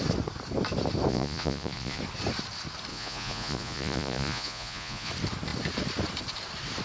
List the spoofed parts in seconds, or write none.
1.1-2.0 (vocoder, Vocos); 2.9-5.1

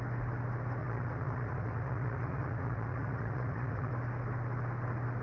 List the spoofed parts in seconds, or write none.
0.8-3.9 (vocoder, Vocos)

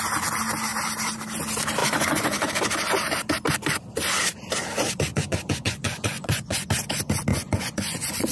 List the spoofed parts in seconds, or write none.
1.8-2.5 (vocoder, Vocos); 5.1-6.7; 7.3-8.3

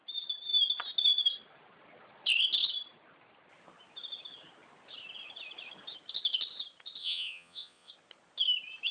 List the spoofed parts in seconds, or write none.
7.0-7.9 (vocoder, Vocos)

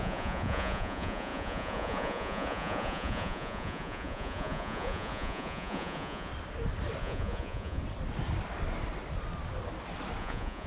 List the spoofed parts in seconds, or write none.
0.0-6.3 (vocoder, Vocos); 7.0-7.8; 10.2-10.7